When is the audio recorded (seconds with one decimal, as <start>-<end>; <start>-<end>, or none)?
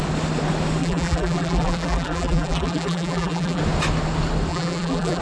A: 0.0-0.8; 3.6-4.5